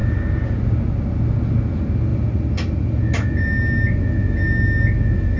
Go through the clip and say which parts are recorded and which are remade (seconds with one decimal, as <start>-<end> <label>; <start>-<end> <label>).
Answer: 0.0-5.4 recorded